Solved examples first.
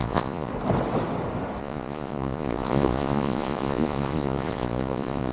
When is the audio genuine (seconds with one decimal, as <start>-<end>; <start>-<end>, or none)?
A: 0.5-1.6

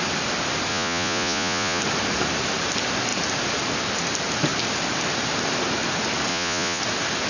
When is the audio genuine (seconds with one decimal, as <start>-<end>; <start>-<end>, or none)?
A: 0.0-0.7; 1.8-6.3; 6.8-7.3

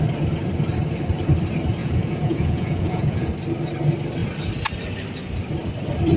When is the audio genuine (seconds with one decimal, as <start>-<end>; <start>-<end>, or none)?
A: 0.0-1.8; 3.3-6.2